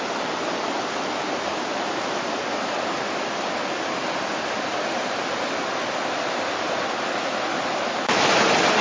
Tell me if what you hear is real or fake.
real